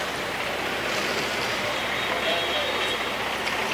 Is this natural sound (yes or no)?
yes